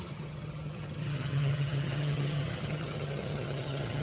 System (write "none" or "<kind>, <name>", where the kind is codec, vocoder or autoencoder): vocoder, HiFi-GAN